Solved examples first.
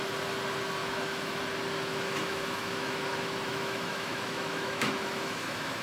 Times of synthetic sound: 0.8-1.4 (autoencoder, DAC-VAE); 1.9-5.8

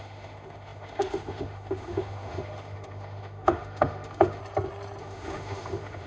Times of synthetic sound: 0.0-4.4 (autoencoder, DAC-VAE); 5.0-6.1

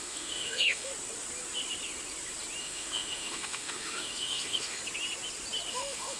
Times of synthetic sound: 0.0-0.9 (autoencoder, DAC-VAE); 2.6-4.8; 5.7-6.2

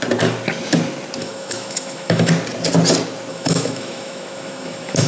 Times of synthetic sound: 1.2-2.3 (autoencoder, DAC-VAE); 3.3-5.1

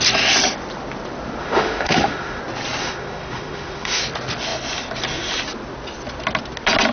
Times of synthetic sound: 1.4-2.4 (autoencoder, DAC-VAE); 2.8-4.0

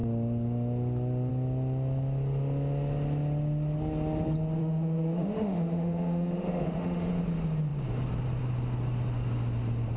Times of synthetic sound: 4.6-7.1 (autoencoder, DAC-VAE)

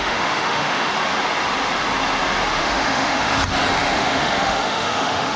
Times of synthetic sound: 0.0-0.9 (autoencoder, DAC-VAE); 2.6-3.3; 3.9-5.4